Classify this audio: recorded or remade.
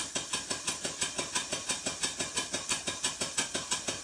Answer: recorded